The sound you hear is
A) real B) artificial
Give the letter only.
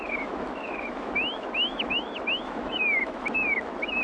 B